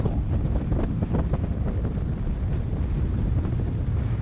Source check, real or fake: real